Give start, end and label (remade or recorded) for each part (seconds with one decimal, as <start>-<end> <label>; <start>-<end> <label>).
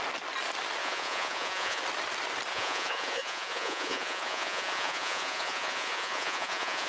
0.0-0.8 recorded; 0.8-1.8 remade; 1.8-2.5 recorded; 2.5-6.9 remade